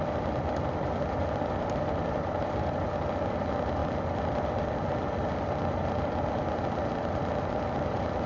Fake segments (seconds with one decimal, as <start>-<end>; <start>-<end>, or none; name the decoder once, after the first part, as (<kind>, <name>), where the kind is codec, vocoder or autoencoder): none